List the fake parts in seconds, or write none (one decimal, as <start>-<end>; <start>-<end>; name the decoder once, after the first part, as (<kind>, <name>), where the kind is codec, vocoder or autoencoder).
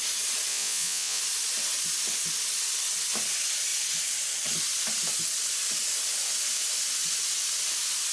0.5-1.2 (vocoder, Vocos)